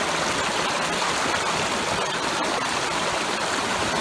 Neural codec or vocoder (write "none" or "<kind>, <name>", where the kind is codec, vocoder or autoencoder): none